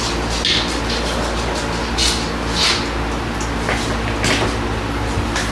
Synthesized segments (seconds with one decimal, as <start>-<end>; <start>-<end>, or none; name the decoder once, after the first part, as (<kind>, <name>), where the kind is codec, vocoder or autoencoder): none